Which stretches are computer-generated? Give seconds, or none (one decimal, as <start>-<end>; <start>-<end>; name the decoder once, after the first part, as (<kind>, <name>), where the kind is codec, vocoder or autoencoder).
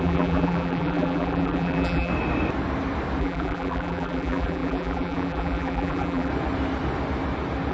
0.0-2.1 (vocoder, BigVGAN v2); 3.2-6.3